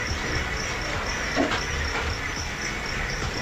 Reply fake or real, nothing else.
real